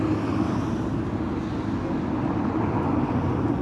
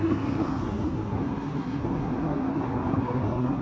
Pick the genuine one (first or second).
first